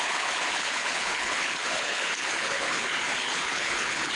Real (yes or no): no